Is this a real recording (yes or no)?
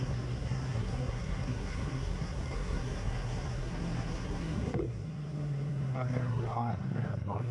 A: no